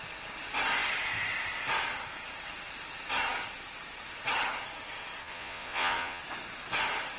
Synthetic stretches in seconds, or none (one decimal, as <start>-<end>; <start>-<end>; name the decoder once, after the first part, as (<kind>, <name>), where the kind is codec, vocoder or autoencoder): 5.2-6.2 (vocoder, Vocos)